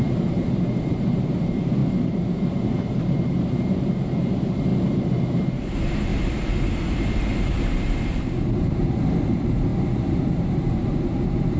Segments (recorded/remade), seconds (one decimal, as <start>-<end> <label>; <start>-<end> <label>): 0.0-4.7 remade; 4.7-5.3 recorded; 5.3-6.1 remade; 6.1-6.8 recorded; 6.8-11.6 remade